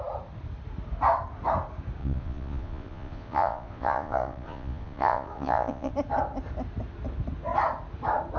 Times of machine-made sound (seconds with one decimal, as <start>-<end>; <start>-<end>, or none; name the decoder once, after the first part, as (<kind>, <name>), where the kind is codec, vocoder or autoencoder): 2.0-5.9 (vocoder, Vocos)